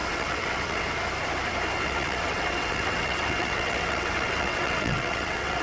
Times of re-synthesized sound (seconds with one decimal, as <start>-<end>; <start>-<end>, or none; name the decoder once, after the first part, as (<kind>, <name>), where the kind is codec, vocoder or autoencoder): 0.0-0.8 (vocoder, WaveNeXt); 1.8-5.6